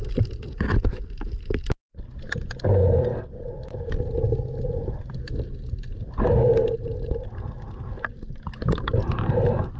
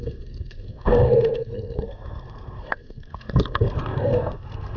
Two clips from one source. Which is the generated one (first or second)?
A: second